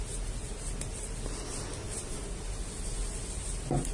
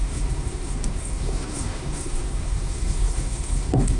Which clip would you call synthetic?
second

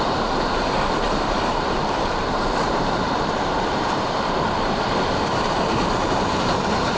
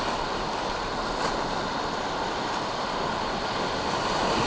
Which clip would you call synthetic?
first